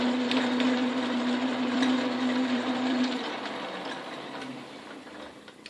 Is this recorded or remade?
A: remade